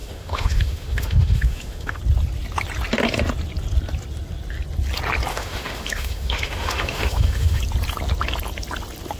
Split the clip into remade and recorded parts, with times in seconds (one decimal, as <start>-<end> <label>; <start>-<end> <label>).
0.0-2.0 remade; 2.0-5.3 recorded; 5.3-7.6 remade; 7.6-9.2 recorded